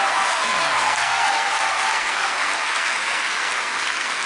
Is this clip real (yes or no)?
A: no